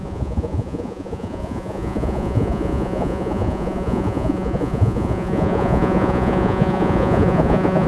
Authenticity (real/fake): fake